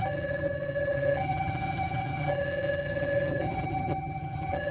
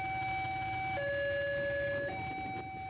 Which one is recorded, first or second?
second